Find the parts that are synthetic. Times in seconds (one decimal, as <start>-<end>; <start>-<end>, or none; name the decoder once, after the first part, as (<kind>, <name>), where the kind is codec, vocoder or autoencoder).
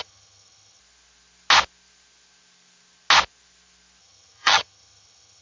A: 0.0-0.8 (vocoder, HiFi-GAN); 4.0-5.4